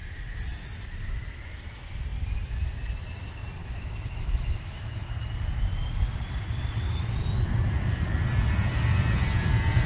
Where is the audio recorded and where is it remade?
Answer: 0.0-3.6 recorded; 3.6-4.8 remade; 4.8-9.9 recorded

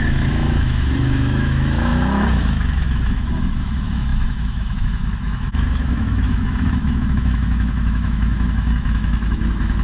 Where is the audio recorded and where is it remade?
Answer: 0.0-9.8 remade

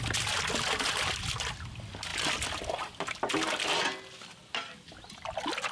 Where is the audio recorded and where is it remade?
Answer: 0.0-5.7 recorded

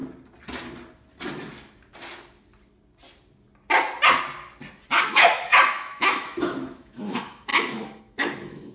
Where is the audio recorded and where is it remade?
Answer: 0.0-4.9 recorded; 4.9-8.7 remade